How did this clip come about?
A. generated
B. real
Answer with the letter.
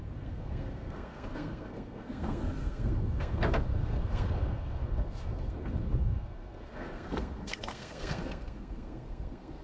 A